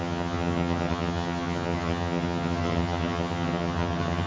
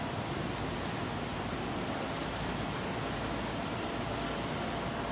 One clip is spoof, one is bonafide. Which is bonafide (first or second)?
second